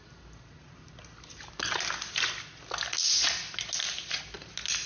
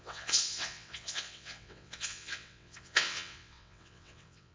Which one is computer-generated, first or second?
second